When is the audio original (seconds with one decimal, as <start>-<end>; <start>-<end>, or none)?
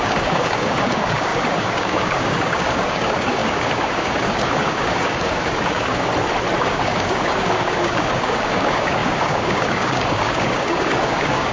6.1-6.6